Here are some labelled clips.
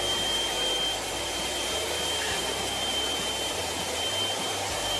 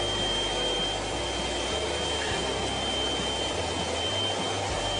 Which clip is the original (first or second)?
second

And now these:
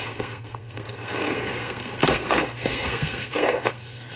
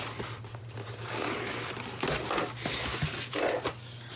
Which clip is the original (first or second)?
second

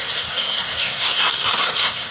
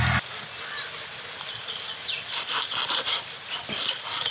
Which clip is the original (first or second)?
second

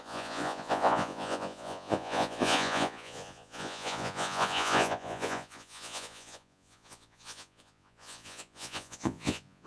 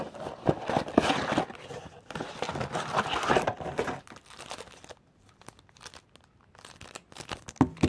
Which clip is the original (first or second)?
second